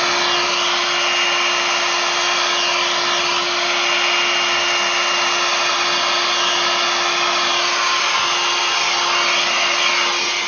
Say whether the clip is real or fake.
real